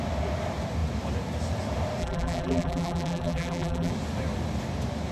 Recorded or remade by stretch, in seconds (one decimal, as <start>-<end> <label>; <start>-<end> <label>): 0.0-2.0 recorded; 2.0-3.9 remade; 3.9-5.1 recorded